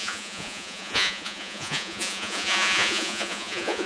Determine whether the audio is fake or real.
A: fake